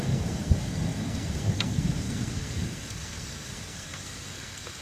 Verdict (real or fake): fake